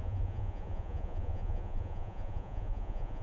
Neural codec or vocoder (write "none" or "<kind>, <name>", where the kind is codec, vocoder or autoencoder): vocoder, Vocos